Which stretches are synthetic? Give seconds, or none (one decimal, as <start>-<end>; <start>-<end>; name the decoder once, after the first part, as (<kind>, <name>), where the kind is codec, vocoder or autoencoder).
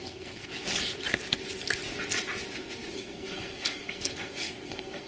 0.0-0.5 (codec, SNAC); 2.9-5.1